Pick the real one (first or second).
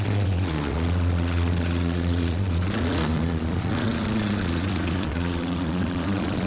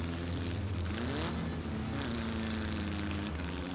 second